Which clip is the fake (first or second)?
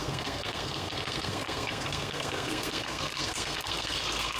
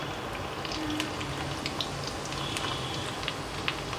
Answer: first